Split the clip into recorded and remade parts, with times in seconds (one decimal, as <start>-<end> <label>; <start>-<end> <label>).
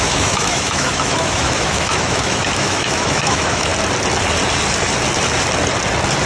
0.0-3.7 remade; 3.7-6.3 recorded